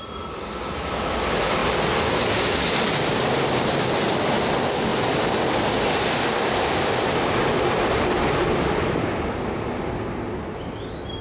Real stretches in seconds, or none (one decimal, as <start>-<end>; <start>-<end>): 0.0-11.2